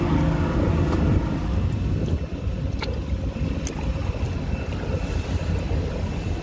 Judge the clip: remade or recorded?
recorded